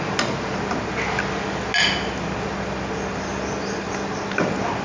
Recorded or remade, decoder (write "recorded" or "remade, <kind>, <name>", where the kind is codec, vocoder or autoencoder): recorded